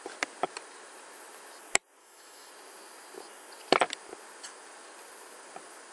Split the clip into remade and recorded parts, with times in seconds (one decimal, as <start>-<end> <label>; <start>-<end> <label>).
0.0-2.0 recorded; 2.0-2.5 remade; 2.5-5.9 recorded